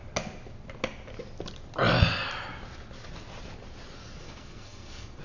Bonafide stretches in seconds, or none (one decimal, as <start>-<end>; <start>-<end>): 0.0-4.2

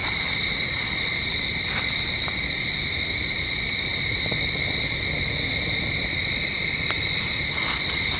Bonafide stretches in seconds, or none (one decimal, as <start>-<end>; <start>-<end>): 0.0-8.2